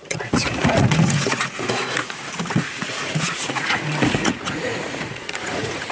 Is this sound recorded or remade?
remade